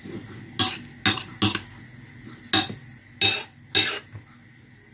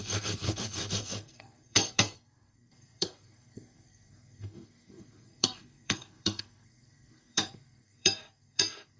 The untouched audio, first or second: first